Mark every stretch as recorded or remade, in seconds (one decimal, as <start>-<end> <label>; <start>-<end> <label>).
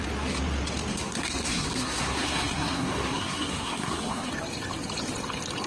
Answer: 0.0-0.9 recorded; 0.9-4.3 remade; 4.3-5.7 recorded